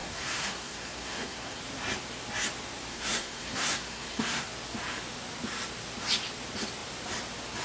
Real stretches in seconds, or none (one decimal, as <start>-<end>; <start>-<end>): 1.6-2.9; 4.5-7.6